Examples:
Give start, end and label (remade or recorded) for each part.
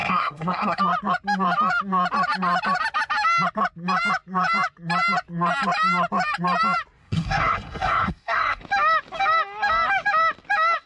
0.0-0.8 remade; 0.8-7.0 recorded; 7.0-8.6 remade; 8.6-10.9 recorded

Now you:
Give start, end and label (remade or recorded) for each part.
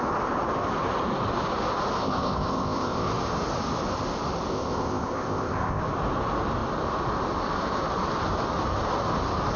0.0-2.0 recorded; 2.0-3.1 remade; 3.1-4.5 recorded; 4.5-5.8 remade; 5.8-9.6 recorded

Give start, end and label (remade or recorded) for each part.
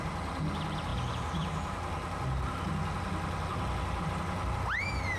0.0-0.9 remade; 0.9-4.0 recorded; 4.0-5.2 remade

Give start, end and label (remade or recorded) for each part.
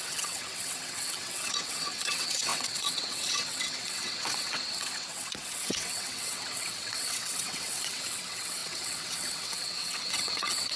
0.0-10.8 remade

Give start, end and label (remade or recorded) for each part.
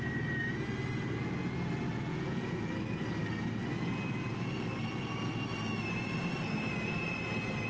0.0-2.1 recorded; 2.1-2.7 remade; 2.7-7.7 recorded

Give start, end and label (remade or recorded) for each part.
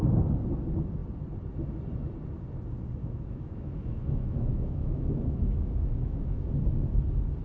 0.0-3.0 recorded; 3.0-6.5 remade; 6.5-7.4 recorded